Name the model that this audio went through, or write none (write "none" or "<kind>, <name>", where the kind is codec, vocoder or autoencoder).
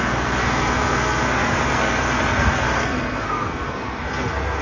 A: codec, SNAC